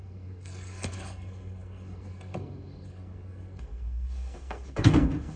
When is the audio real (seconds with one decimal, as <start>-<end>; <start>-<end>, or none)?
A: none